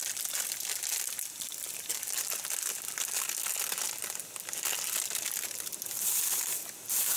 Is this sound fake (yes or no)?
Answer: no